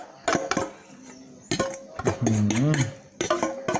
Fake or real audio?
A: real